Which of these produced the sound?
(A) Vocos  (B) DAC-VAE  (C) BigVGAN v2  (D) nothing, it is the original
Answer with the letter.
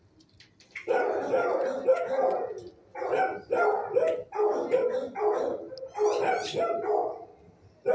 D